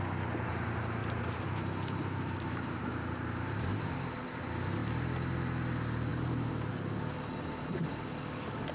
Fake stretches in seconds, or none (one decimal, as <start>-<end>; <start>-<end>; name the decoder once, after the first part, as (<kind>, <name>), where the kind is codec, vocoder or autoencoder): 1.0-3.8 (vocoder, BigVGAN v2); 6.1-6.7